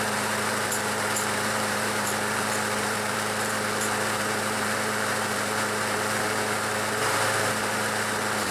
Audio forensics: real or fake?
fake